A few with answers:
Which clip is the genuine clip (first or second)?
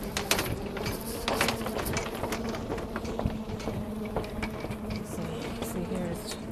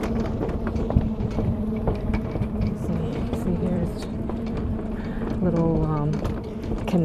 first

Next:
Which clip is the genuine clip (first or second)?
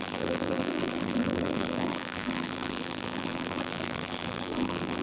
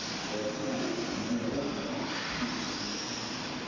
second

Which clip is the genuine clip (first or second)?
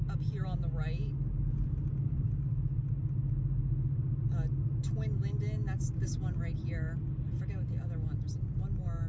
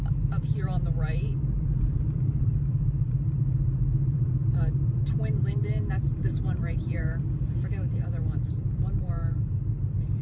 first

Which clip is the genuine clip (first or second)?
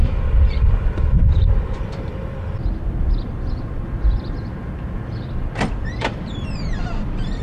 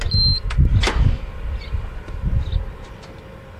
second